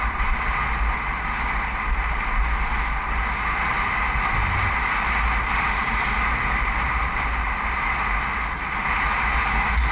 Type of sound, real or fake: real